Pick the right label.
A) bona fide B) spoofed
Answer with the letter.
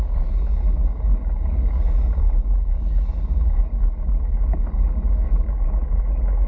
A